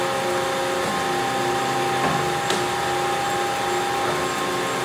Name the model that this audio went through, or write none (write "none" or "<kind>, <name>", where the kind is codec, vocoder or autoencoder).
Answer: none